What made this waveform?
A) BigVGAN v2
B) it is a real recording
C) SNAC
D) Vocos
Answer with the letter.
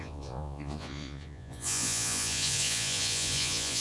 D